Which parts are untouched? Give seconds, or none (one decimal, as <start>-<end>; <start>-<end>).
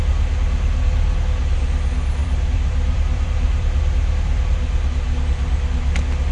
0.0-2.2; 3.8-6.3